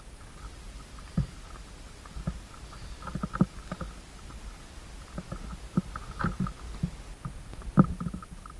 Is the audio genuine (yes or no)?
yes